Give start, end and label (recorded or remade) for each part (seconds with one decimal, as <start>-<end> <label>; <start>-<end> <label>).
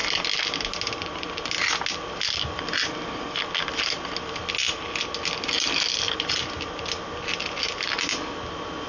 0.0-8.9 recorded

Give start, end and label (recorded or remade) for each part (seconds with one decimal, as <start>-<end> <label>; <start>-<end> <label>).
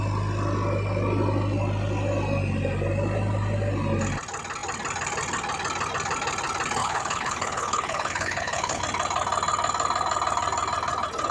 0.0-6.8 recorded; 6.8-8.8 remade; 8.8-11.3 recorded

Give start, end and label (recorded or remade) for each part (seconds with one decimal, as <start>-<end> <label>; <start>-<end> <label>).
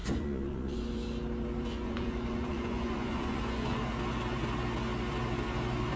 0.0-0.8 remade; 0.8-1.8 recorded; 1.8-3.8 remade; 3.8-6.0 recorded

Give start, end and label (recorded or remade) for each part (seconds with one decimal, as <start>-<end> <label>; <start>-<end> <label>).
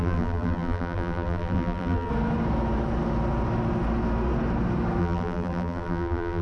0.0-2.1 remade; 2.1-5.0 recorded; 5.0-6.4 remade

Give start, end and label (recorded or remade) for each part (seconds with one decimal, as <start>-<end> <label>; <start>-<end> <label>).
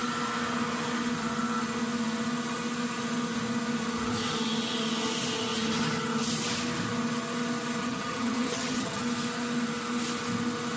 0.0-7.8 recorded; 7.8-9.0 remade; 9.0-10.8 recorded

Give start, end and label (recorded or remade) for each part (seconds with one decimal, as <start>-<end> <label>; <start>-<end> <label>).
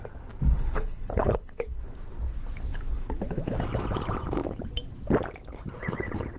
0.0-0.6 recorded; 0.6-2.0 remade; 2.0-2.7 recorded; 2.7-3.6 remade; 3.6-6.4 recorded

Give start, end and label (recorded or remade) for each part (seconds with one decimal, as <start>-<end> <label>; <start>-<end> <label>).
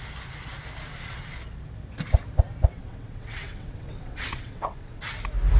0.0-2.8 recorded; 2.8-5.1 remade; 5.1-5.6 recorded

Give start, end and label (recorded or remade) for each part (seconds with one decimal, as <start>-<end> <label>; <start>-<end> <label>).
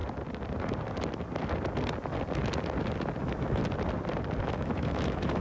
0.0-3.2 recorded; 3.2-3.6 remade; 3.6-4.4 recorded; 4.4-5.4 remade